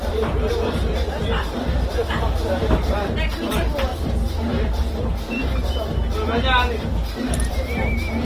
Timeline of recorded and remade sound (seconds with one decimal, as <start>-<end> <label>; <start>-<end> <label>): 0.0-5.4 remade; 5.4-7.5 recorded; 7.5-8.2 remade